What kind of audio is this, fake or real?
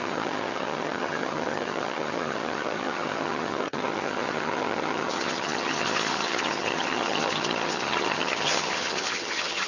fake